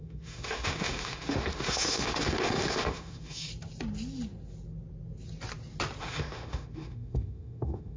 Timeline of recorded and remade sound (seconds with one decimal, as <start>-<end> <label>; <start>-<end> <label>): 0.0-3.5 remade; 3.5-6.0 recorded; 6.0-8.0 remade